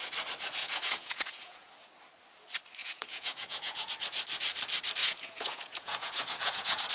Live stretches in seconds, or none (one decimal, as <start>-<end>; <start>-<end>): 0.0-0.6; 1.7-2.8; 3.9-5.0